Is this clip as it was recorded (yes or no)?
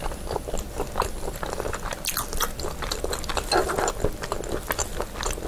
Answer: yes